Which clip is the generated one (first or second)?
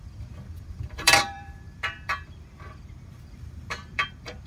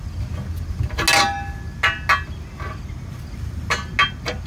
first